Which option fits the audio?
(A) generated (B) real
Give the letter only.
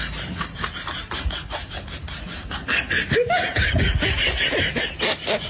B